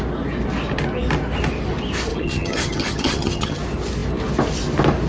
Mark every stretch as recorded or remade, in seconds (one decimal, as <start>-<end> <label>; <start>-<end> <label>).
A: 0.0-2.1 recorded; 2.1-3.6 remade; 3.6-5.1 recorded